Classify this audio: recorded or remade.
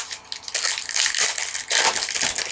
recorded